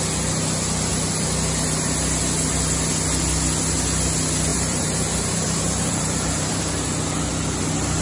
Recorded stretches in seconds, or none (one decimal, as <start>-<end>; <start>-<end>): 0.0-4.5; 6.6-8.0

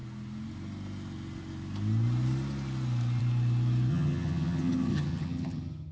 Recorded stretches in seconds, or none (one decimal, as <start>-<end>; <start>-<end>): 0.0-3.9

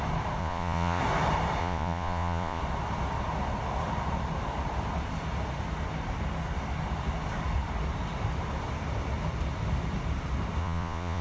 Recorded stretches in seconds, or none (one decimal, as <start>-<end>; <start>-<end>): 0.0-0.4; 1.0-1.6; 2.6-10.6

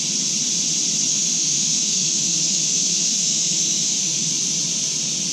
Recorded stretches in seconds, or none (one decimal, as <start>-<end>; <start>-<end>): 0.0-1.1; 4.3-5.3

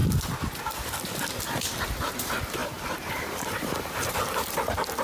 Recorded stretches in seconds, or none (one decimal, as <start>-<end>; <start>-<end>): 0.0-2.6; 4.1-5.0

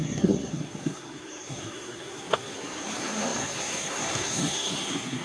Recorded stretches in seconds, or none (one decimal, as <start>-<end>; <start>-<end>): none